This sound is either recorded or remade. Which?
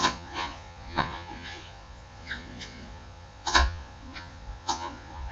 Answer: remade